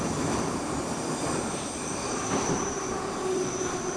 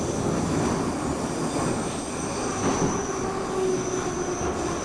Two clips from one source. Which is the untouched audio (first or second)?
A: second